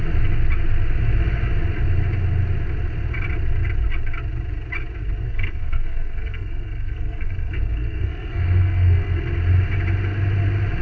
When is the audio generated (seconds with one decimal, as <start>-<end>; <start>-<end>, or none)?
5.0-9.2